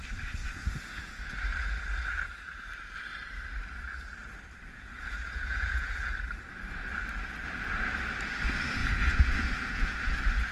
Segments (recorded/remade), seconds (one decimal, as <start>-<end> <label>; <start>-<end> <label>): 0.0-0.4 recorded; 0.4-1.3 remade; 1.3-4.7 recorded; 4.7-6.0 remade; 6.0-8.8 recorded; 8.8-9.9 remade; 9.9-10.5 recorded

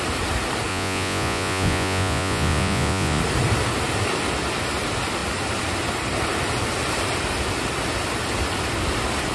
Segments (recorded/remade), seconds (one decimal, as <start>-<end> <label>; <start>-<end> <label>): 0.0-0.7 recorded; 0.7-3.2 remade; 3.2-9.3 recorded

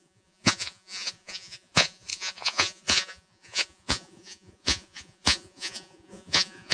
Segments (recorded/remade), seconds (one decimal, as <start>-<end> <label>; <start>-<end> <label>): 0.0-6.7 remade

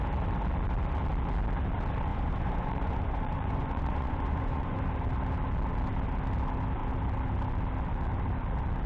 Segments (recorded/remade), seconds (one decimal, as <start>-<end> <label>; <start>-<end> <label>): 0.0-2.1 recorded; 2.1-4.9 remade; 4.9-8.9 recorded

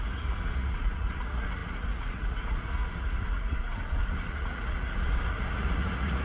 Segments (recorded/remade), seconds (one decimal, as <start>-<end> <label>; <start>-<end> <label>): 0.0-6.2 remade

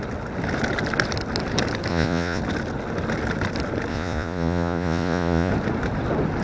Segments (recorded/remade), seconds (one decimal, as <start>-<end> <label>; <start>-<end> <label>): 0.0-1.9 recorded; 1.9-2.4 remade; 2.4-3.9 recorded; 3.9-5.5 remade; 5.5-6.4 recorded

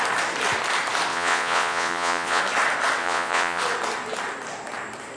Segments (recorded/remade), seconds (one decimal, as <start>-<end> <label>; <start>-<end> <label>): 0.0-1.1 recorded; 1.1-2.4 remade; 2.4-3.0 recorded; 3.0-3.6 remade; 3.6-5.2 recorded